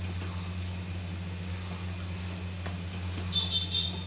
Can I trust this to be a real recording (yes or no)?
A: yes